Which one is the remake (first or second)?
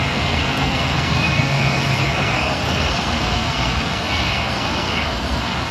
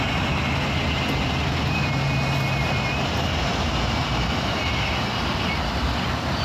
first